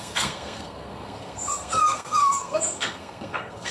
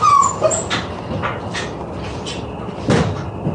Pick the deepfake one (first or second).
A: first